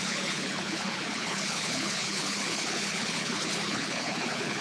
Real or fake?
fake